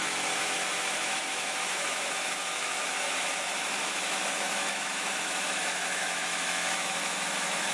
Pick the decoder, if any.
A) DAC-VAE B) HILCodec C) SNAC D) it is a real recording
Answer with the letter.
A